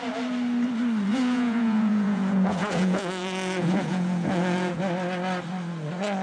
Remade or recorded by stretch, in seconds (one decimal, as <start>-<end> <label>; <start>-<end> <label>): 0.0-1.1 recorded; 1.1-4.8 remade; 4.8-6.2 recorded